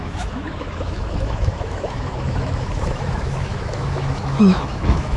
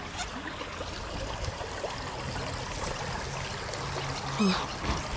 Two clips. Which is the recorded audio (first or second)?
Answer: second